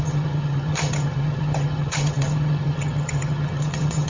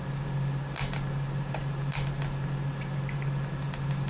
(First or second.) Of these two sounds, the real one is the second